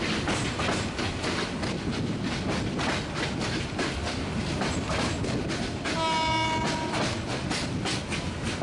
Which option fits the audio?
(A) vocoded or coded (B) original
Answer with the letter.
B